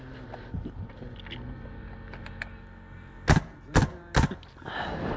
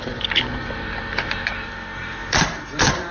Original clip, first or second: first